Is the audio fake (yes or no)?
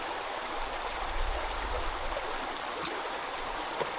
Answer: no